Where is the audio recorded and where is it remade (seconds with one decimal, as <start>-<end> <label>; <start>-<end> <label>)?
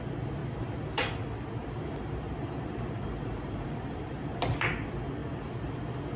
0.0-0.4 recorded; 0.4-1.1 remade; 1.1-1.6 recorded; 1.6-4.4 remade; 4.4-5.2 recorded; 5.2-5.8 remade; 5.8-6.2 recorded